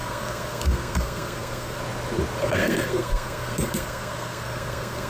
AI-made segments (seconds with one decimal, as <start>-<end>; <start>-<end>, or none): 0.0-1.8; 2.4-5.1

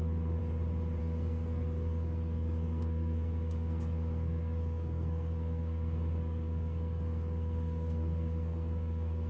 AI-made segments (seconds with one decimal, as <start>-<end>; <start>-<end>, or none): 0.0-0.4; 1.0-9.3

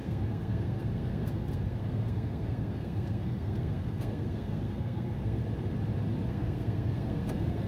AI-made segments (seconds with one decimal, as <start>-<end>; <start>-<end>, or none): 0.0-5.4; 6.3-7.7